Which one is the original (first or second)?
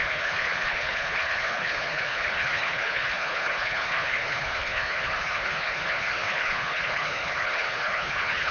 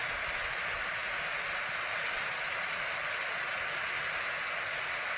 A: second